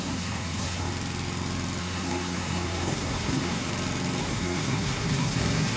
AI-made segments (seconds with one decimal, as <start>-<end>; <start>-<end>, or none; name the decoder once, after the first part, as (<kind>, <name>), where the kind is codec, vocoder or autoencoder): 0.0-0.9 (codec, SNAC); 1.8-3.7; 4.2-5.8